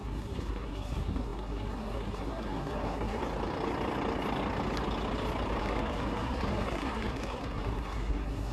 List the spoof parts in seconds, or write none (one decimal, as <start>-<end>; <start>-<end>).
0.0-3.2; 5.6-8.5